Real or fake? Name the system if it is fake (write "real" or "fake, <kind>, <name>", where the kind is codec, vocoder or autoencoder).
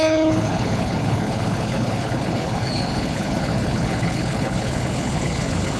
fake, codec, HILCodec